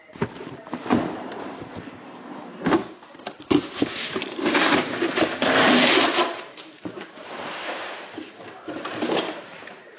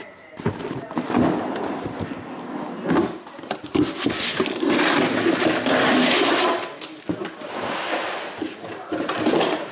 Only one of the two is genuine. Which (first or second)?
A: second